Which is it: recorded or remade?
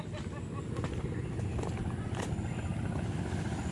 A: recorded